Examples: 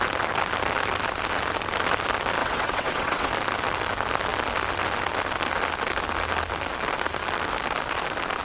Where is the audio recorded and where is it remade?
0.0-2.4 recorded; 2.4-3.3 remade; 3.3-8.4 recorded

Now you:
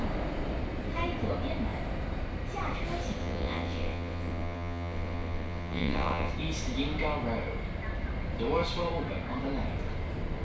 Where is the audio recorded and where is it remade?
0.0-3.2 recorded; 3.2-6.3 remade; 6.3-10.4 recorded

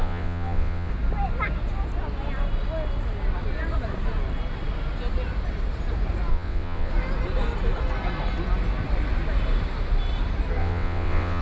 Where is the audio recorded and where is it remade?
0.0-0.9 remade; 0.9-6.3 recorded; 6.3-6.9 remade; 6.9-10.6 recorded; 10.6-11.4 remade